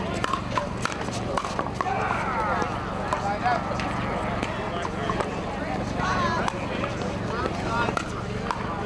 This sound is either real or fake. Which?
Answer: real